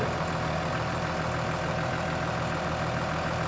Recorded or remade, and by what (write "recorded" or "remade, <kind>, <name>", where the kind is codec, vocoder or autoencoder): remade, vocoder, BigVGAN v2